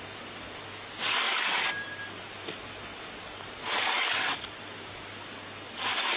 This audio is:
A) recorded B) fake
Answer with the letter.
A